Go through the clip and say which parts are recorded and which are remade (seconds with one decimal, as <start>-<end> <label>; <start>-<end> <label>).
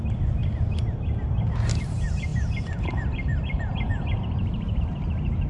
0.0-0.4 remade; 0.4-1.8 recorded; 1.8-5.5 remade